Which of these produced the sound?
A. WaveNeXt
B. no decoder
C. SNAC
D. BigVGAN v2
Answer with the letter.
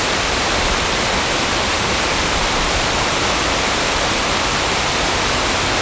B